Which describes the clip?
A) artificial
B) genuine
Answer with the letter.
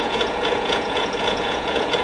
A